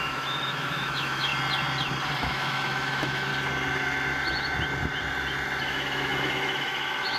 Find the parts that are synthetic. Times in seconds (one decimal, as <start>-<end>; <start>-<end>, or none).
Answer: 0.0-1.3; 2.2-3.3; 5.6-7.2